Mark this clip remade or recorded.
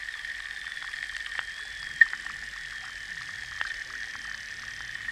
recorded